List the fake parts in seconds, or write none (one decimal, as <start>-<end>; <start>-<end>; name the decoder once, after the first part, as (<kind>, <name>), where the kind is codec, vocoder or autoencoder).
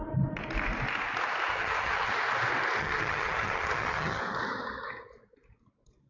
1.5-2.1 (vocoder, HiFi-GAN); 2.8-4.2